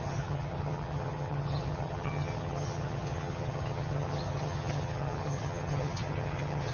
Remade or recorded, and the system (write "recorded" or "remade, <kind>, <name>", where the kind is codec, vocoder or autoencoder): remade, vocoder, HiFi-GAN